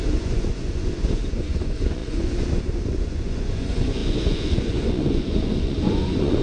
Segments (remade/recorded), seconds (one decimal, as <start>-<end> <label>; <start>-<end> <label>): 0.0-6.4 remade